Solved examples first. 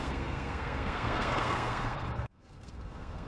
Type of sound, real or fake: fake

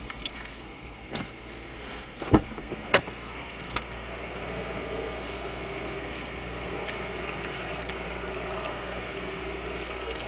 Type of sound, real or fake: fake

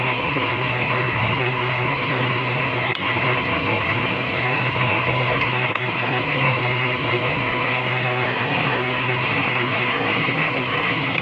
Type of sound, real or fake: fake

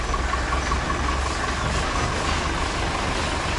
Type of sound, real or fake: real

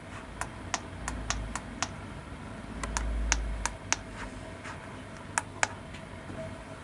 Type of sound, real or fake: real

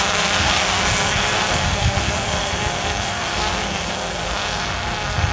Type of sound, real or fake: fake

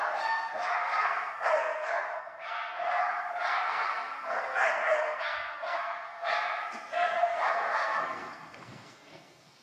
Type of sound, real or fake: fake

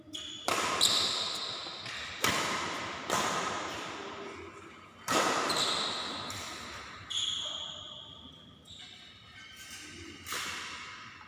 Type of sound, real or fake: real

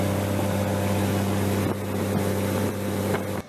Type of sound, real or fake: real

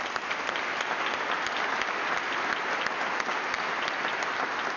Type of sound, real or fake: real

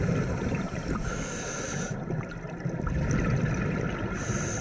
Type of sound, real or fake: real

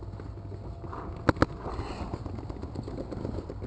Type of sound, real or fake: real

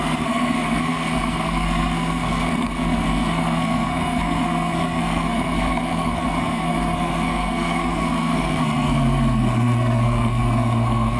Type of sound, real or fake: fake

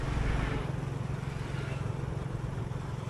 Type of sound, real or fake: real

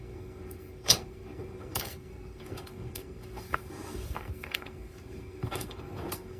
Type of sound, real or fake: fake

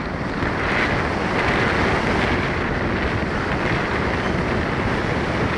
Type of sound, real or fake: real